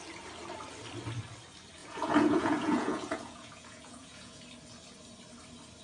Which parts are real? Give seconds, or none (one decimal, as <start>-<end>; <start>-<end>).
0.0-1.8; 4.4-5.8